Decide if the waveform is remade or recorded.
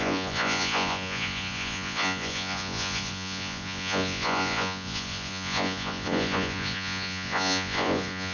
remade